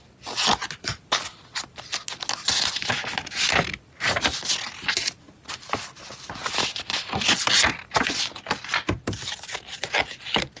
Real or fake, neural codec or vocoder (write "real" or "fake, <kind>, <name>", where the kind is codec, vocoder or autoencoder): real